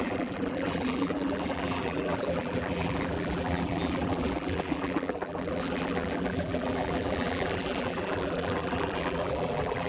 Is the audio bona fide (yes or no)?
no